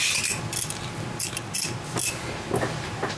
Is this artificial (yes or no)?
no